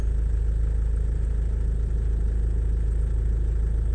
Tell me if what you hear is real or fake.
real